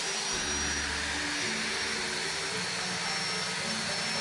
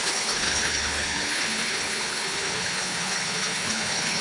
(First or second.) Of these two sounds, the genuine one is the first